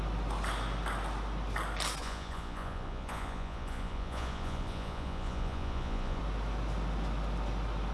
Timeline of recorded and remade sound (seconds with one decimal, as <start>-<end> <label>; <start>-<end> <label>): 0.0-2.0 recorded; 2.0-6.2 remade; 6.2-7.9 recorded